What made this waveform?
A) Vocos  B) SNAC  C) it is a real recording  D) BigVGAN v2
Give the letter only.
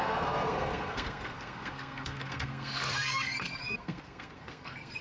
B